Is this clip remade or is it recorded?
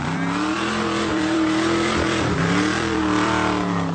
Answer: remade